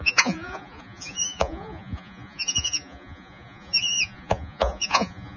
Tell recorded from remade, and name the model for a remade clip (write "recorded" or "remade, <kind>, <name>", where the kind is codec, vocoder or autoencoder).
remade, vocoder, Vocos